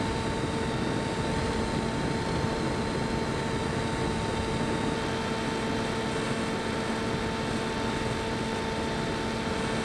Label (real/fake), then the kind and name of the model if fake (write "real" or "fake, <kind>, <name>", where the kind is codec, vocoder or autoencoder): real